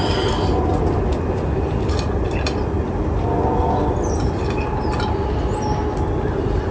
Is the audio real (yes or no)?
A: yes